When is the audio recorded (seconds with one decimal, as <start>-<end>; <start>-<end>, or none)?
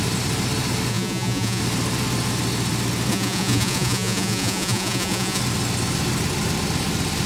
0.0-0.9; 1.6-3.1; 5.4-7.3